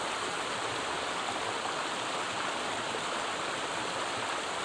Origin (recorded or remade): recorded